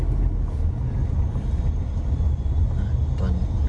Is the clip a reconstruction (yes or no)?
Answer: no